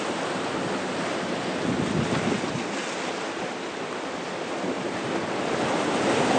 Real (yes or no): yes